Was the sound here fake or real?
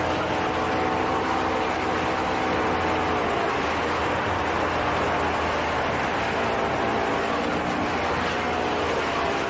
real